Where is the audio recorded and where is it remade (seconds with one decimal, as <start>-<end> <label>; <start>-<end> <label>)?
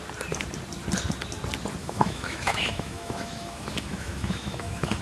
0.0-1.8 recorded; 1.8-5.0 remade